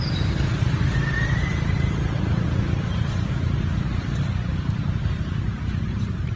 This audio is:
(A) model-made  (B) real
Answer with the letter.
A